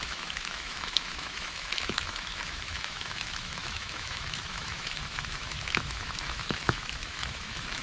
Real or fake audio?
fake